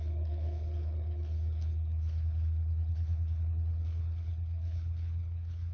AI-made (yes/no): yes